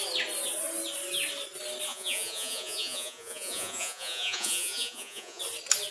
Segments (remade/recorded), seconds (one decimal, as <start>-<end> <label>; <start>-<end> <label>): 0.0-1.9 recorded; 1.9-5.4 remade; 5.4-5.9 recorded